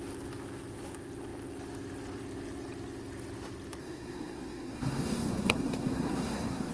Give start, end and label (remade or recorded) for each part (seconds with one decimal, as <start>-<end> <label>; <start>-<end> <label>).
0.0-3.8 recorded; 3.8-6.7 remade